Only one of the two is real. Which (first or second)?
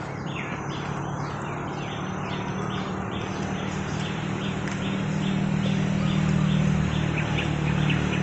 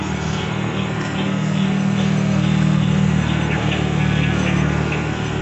first